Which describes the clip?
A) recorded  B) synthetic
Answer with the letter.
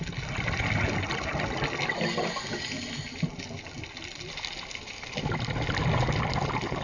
A